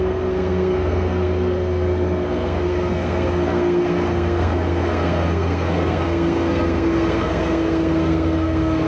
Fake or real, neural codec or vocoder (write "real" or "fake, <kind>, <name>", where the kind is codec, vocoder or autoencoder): fake, codec, SNAC